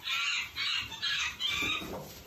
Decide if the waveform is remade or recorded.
remade